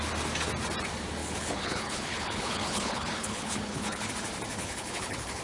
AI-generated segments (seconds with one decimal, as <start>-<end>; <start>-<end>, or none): 1.2-4.1; 4.6-5.4